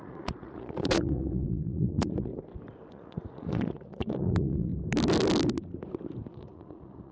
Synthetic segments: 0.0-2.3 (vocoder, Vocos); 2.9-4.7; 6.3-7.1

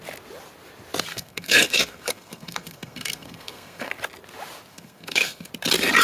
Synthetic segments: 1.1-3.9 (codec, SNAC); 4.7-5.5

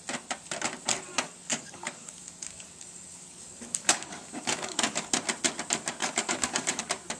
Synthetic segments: 1.1-5.1 (codec, DAC); 6.0-6.8